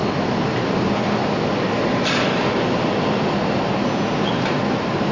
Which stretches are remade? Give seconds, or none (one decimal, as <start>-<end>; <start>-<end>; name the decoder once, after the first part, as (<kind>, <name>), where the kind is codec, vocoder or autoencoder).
none